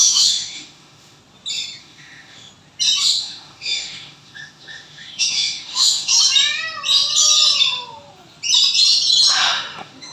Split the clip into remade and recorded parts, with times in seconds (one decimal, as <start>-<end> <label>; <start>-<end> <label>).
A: 0.0-1.2 remade; 1.2-1.8 recorded; 1.8-2.5 remade; 2.5-3.2 recorded; 3.2-6.1 remade; 6.1-9.3 recorded; 9.3-10.1 remade